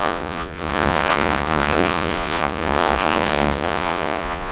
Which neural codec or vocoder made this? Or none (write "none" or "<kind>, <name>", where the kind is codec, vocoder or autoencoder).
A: vocoder, Vocos